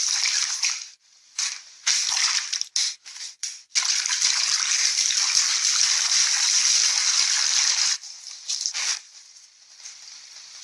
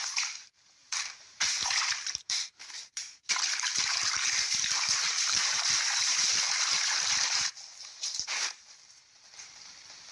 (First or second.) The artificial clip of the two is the second